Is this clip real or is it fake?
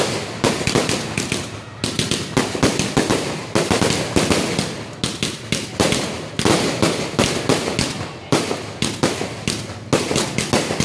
real